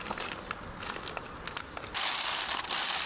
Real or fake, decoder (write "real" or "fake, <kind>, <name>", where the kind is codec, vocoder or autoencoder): real